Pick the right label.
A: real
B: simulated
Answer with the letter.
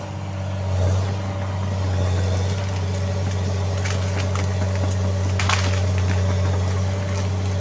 A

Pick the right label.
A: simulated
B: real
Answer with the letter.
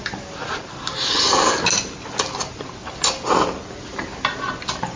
B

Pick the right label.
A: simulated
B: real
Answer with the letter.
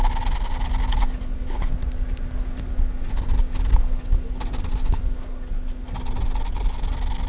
B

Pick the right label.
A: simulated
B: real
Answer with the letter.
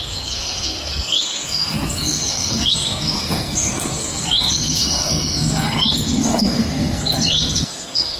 A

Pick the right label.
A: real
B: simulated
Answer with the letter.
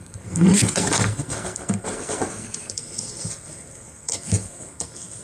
B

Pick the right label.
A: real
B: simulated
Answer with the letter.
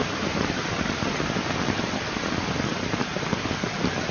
A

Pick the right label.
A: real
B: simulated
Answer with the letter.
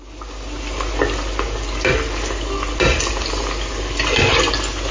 A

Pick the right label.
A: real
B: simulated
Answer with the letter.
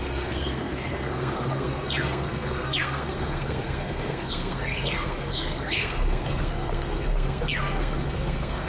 B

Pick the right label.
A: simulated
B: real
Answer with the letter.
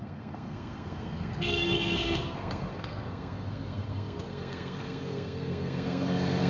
A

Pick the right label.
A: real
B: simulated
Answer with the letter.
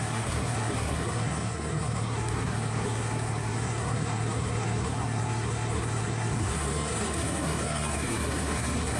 B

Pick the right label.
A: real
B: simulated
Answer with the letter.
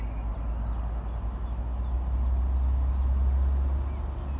A